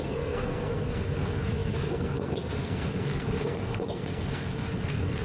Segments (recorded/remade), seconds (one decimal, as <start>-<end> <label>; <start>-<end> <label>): 0.0-5.2 remade